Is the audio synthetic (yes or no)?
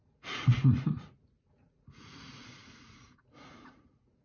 yes